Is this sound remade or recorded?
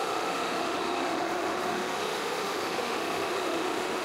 remade